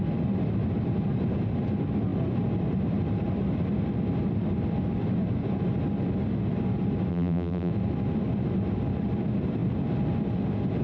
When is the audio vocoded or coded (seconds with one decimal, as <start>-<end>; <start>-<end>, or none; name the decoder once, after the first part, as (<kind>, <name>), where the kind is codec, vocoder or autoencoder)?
7.1-7.7 (vocoder, BigVGAN v2)